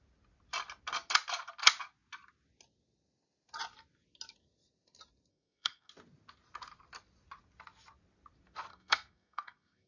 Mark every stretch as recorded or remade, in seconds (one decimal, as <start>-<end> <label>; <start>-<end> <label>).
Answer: 0.0-5.3 recorded; 5.3-5.9 remade; 5.9-8.7 recorded; 8.7-9.9 remade